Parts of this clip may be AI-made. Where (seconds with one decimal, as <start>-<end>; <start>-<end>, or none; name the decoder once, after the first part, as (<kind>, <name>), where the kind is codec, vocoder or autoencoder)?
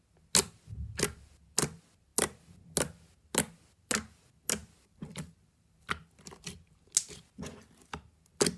4.6-6.5 (vocoder, BigVGAN v2)